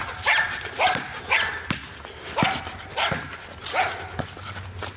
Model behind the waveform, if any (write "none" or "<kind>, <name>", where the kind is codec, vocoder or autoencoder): none